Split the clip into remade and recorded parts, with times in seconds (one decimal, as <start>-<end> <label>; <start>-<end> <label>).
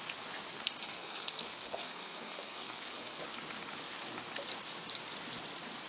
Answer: 0.0-0.5 recorded; 0.5-3.2 remade; 3.2-5.9 recorded